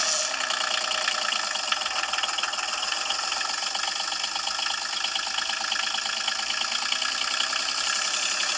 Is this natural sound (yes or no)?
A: yes